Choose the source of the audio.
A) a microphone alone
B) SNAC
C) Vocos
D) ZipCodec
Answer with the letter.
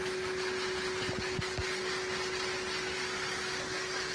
A